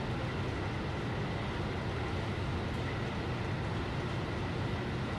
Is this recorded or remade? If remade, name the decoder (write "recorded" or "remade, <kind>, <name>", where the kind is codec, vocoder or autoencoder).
recorded